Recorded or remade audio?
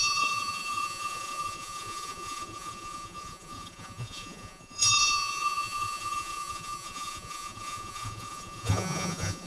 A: remade